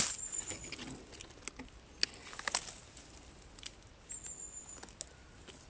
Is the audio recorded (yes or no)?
yes